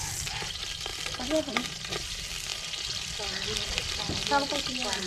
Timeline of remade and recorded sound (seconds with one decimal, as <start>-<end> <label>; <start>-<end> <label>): 0.0-5.1 recorded